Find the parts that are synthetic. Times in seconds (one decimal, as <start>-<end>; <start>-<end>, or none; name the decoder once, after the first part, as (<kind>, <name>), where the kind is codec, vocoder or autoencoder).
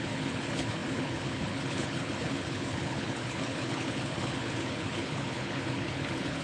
0.0-6.4 (codec, HILCodec)